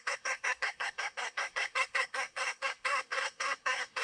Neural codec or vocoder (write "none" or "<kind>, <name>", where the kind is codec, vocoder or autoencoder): codec, SNAC